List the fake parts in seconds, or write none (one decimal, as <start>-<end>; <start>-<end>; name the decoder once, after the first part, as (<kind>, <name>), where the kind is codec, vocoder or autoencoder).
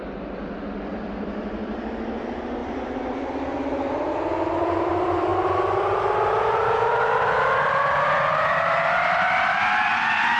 0.0-5.3 (vocoder, BigVGAN v2); 7.2-10.4